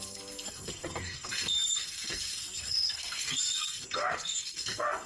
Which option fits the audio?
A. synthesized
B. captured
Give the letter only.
A